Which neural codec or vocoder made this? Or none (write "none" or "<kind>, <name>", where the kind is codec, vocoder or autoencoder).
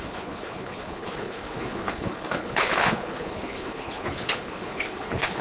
codec, HILCodec